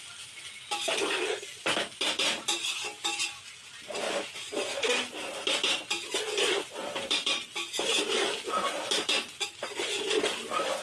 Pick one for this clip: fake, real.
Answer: real